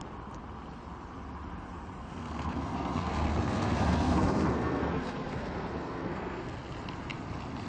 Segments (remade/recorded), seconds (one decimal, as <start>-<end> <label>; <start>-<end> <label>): 0.0-2.0 recorded; 2.0-6.6 remade; 6.6-7.7 recorded